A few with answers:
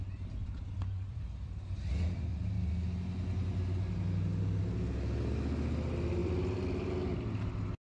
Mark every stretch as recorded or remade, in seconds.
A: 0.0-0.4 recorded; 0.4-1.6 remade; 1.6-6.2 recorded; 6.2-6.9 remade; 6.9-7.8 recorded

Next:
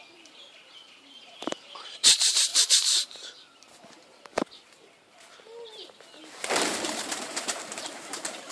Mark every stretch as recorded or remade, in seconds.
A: 0.0-2.5 remade; 2.5-6.6 recorded; 6.6-8.5 remade

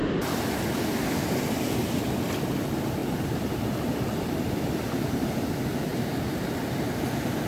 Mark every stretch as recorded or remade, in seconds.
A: 0.0-3.0 recorded; 3.0-5.3 remade; 5.3-5.9 recorded; 5.9-6.6 remade; 6.6-7.5 recorded

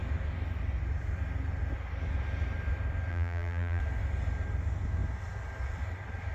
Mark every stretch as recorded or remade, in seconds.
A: 0.0-3.1 recorded; 3.1-3.8 remade; 3.8-6.3 recorded

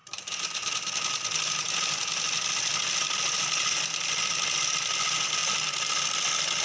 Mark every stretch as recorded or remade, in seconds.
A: 0.0-0.9 remade; 0.9-5.4 recorded; 5.4-6.0 remade; 6.0-6.6 recorded

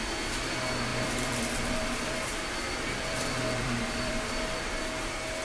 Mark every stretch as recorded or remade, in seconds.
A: 0.0-0.9 recorded; 0.9-4.1 remade; 4.1-5.4 recorded

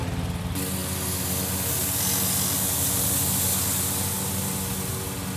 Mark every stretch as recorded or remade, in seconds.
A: 0.0-5.4 recorded

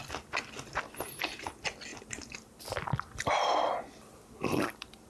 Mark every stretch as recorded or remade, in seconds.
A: 0.0-1.9 recorded; 1.9-5.1 remade